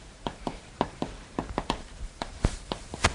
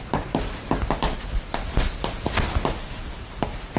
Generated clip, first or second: first